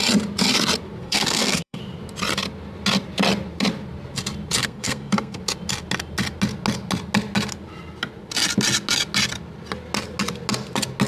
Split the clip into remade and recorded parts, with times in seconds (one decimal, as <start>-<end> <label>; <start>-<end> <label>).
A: 0.0-1.0 recorded; 1.0-1.8 remade; 1.8-4.6 recorded; 4.6-5.4 remade; 5.4-11.1 recorded